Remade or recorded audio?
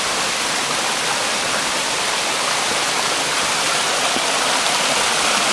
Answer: recorded